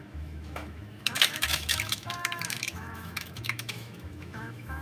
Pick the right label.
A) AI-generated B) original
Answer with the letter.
A